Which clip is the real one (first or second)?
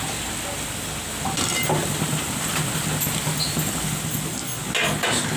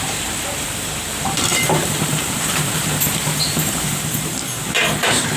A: first